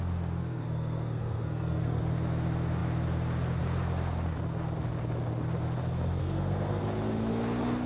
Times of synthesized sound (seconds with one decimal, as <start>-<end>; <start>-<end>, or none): 0.4-2.0; 6.2-6.8